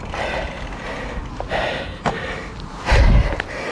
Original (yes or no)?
yes